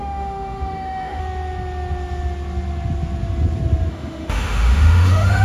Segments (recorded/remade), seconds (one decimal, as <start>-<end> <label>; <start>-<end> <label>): 0.0-1.2 remade; 1.2-3.9 recorded; 3.9-5.4 remade